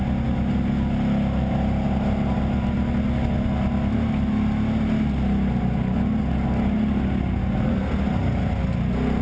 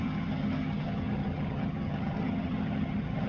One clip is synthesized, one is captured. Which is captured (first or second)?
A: first